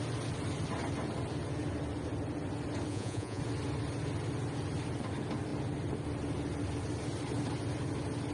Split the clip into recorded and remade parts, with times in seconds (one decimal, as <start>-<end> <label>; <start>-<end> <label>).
0.0-2.9 recorded; 2.9-3.4 remade; 3.4-8.3 recorded